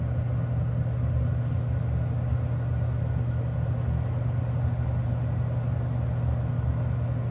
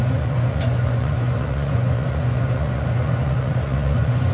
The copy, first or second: second